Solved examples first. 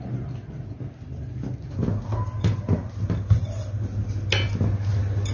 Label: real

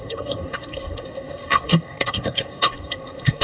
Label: fake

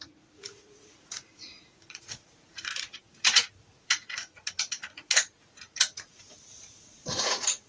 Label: fake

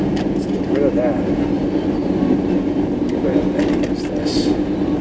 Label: real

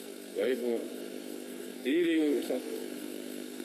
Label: fake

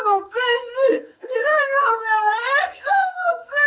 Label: fake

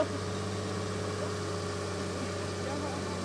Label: real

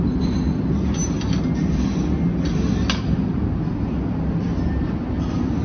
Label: real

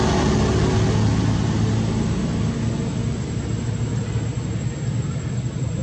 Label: real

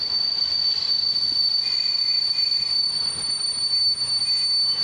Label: real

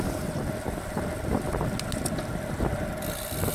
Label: real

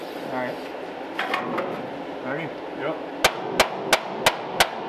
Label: real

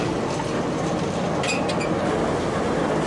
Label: real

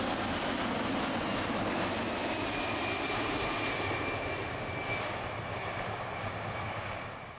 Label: real